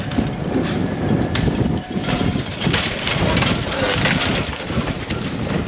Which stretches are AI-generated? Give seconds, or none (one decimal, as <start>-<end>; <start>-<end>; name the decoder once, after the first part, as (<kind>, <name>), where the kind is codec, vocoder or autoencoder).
0.8-4.2 (vocoder, BigVGAN v2)